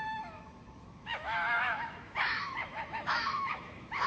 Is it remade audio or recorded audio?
remade